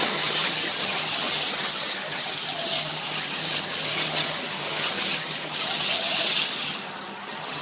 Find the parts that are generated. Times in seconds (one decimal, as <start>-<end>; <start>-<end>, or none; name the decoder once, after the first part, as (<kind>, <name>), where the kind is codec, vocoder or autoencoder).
0.0-7.6 (vocoder, HiFi-GAN)